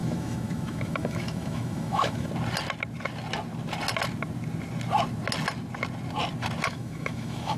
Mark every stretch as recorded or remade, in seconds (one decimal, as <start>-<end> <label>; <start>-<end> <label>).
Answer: 0.0-2.3 remade; 2.3-6.7 recorded; 6.7-7.6 remade

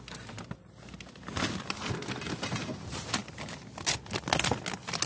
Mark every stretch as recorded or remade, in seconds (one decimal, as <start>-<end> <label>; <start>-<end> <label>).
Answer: 0.0-5.1 recorded

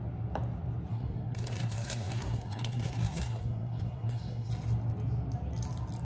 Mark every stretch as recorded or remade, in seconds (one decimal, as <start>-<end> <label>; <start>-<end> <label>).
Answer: 0.0-0.9 recorded; 0.9-4.5 remade; 4.5-6.0 recorded

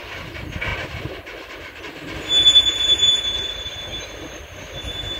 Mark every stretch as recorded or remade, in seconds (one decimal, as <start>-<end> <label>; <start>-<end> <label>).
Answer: 0.0-5.2 recorded

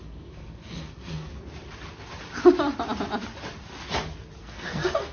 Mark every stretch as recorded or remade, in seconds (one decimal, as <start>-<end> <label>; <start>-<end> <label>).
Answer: 0.0-1.3 remade; 1.3-4.4 recorded; 4.4-5.1 remade

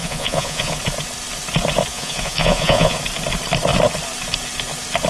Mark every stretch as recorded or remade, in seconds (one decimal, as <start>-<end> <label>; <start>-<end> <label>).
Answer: 0.0-0.7 remade; 0.7-1.9 recorded; 1.9-3.0 remade; 3.0-5.1 recorded